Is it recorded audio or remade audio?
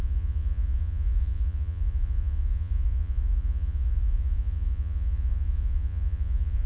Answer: remade